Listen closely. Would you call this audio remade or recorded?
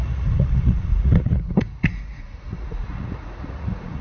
remade